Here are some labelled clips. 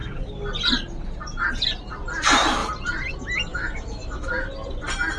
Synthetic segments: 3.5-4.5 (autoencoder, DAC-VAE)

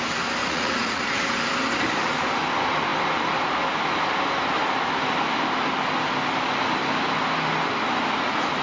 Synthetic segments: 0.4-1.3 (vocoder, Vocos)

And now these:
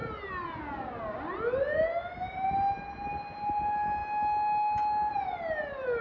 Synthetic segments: none